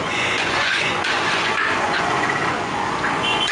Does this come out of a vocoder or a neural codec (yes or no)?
yes